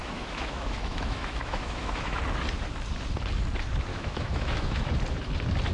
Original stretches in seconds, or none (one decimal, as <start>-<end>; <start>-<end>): 2.2-3.9; 4.9-5.7